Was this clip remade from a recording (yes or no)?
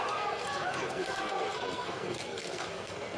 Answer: yes